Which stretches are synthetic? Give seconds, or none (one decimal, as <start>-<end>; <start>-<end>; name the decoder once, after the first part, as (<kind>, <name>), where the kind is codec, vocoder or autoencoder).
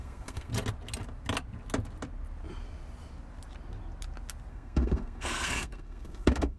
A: 0.0-0.5 (codec, SNAC); 4.5-6.6